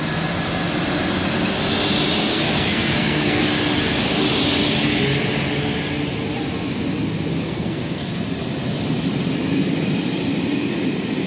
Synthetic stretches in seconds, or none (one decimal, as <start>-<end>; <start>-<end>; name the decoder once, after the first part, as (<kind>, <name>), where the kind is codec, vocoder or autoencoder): 2.3-3.4 (codec, SNAC); 7.4-8.1